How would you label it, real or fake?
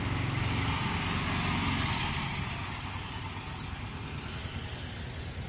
real